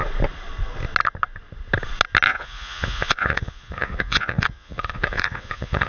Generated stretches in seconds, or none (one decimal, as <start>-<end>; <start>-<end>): 2.3-5.9